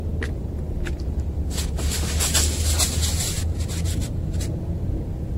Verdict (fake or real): real